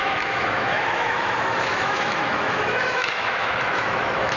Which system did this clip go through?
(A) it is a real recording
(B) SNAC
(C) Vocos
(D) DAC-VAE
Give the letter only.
D